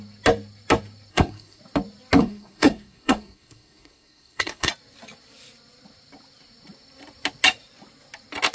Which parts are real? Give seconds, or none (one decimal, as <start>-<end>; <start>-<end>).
0.0-1.1; 1.6-2.2; 4.7-8.5